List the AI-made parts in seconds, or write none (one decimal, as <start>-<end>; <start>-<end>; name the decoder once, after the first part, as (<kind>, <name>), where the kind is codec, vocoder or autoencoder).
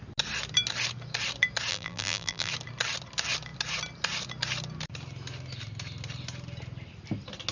1.7-2.5 (vocoder, BigVGAN v2)